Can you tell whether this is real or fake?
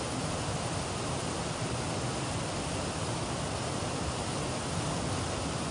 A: real